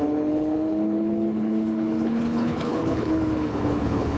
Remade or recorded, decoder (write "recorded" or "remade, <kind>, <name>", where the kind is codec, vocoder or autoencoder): remade, codec, HILCodec